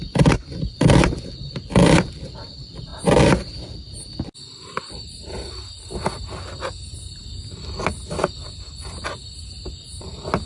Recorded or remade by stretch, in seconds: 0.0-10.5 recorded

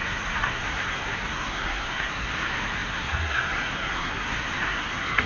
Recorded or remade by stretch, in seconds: 0.0-5.3 remade